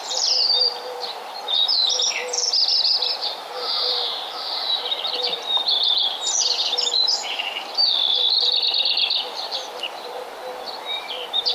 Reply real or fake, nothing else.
fake